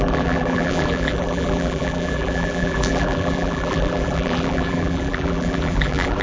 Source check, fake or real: fake